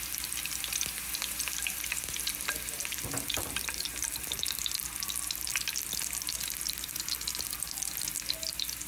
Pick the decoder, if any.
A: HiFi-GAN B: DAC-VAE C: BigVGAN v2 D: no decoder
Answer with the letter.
D